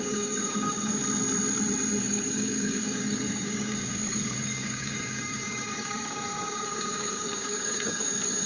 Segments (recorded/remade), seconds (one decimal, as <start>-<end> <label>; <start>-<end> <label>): 0.0-1.0 remade; 1.0-2.0 recorded; 2.0-8.5 remade